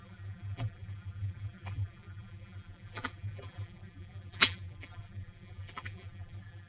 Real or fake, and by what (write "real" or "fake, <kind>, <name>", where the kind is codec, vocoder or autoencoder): fake, vocoder, BigVGAN v2